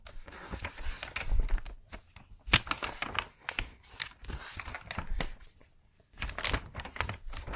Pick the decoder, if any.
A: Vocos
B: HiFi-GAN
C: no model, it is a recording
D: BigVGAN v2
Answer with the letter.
C